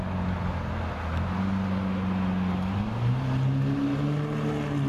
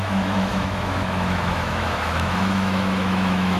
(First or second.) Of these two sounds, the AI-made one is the second